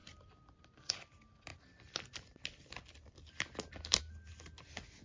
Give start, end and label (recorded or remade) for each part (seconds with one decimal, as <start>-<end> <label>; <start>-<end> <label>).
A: 0.0-0.9 remade; 0.9-1.5 recorded; 1.5-4.0 remade; 4.0-5.0 recorded